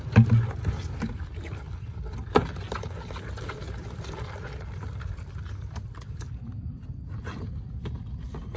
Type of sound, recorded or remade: recorded